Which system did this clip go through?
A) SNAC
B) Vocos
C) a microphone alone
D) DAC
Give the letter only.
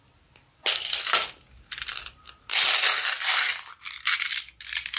C